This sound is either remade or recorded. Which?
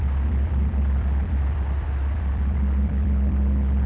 remade